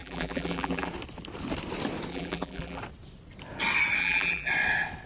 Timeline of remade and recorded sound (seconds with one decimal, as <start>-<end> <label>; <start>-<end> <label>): 0.0-0.9 remade; 0.9-2.1 recorded; 2.1-2.8 remade; 2.8-4.0 recorded; 4.0-4.5 remade; 4.5-5.1 recorded